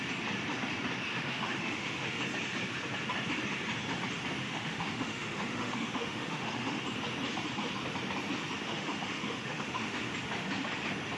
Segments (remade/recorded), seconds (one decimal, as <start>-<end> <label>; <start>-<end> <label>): 0.0-1.1 recorded; 1.1-2.2 remade; 2.2-4.4 recorded; 4.4-6.8 remade; 6.8-8.6 recorded; 8.6-10.0 remade; 10.0-11.2 recorded